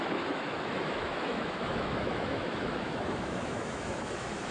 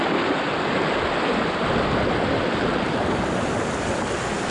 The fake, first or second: first